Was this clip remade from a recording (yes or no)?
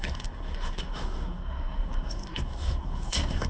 yes